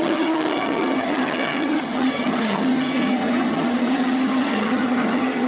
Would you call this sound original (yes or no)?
no